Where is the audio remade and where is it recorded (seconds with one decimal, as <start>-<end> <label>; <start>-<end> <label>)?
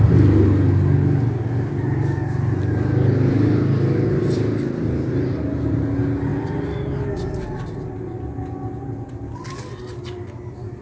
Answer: 0.0-10.8 recorded